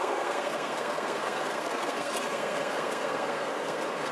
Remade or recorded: remade